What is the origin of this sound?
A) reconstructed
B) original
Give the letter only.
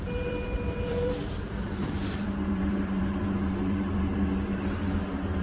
A